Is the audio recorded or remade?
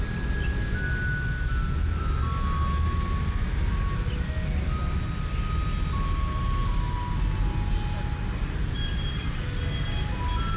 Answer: recorded